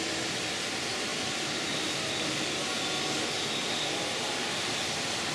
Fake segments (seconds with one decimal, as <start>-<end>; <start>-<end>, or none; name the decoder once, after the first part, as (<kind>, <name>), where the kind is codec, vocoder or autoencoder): none